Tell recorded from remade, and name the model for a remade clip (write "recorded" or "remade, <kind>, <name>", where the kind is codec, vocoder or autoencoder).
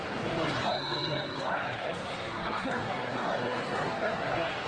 remade, codec, SNAC